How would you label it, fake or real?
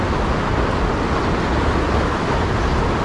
real